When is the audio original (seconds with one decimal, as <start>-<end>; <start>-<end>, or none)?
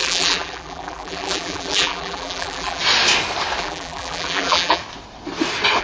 2.8-3.6; 4.8-5.8